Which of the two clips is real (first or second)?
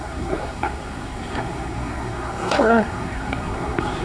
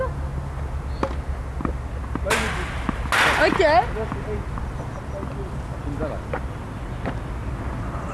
second